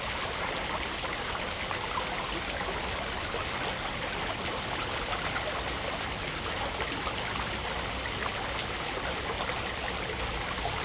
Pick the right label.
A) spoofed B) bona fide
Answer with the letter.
B